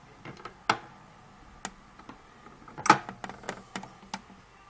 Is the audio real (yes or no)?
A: yes